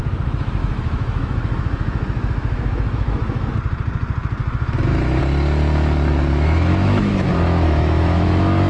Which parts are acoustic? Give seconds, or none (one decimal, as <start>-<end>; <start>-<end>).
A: 0.0-0.6; 3.5-4.4; 5.2-6.3